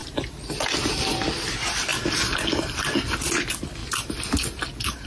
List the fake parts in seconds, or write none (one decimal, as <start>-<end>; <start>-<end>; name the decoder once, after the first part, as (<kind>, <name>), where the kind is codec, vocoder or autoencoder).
none